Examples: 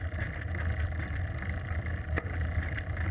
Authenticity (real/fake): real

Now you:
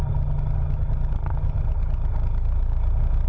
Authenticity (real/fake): real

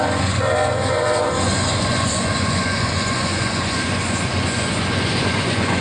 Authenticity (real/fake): fake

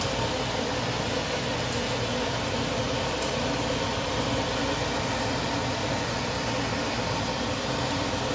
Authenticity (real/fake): real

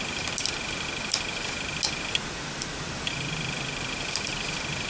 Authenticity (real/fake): real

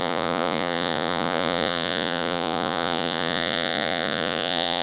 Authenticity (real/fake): fake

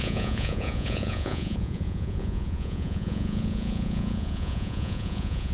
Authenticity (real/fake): fake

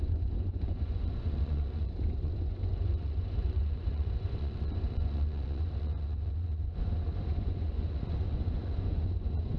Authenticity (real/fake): fake